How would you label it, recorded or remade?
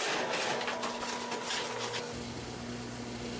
recorded